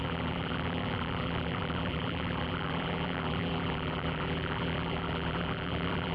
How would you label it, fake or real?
fake